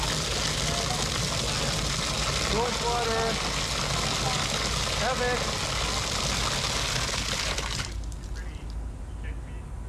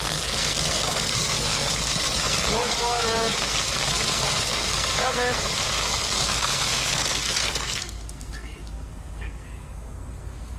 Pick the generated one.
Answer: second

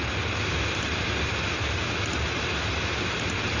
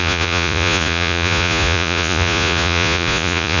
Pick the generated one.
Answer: second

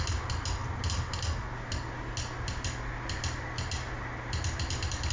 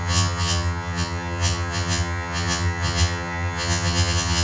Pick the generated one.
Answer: second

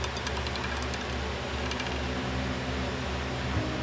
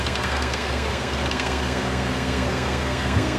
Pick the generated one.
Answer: second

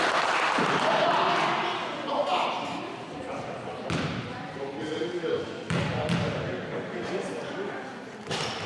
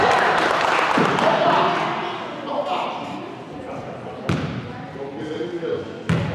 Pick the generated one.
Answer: first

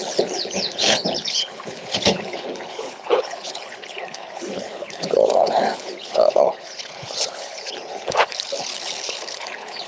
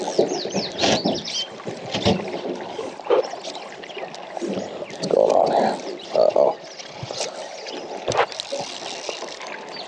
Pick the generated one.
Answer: first